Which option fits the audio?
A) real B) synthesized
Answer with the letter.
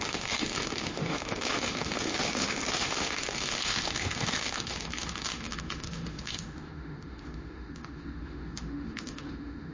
B